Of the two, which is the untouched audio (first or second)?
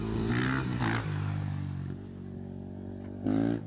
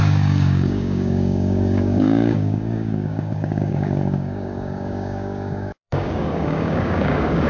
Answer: first